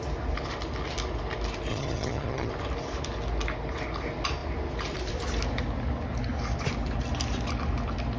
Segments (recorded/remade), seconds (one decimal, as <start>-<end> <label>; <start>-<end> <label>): 0.0-1.7 recorded; 1.7-2.5 remade; 2.5-8.2 recorded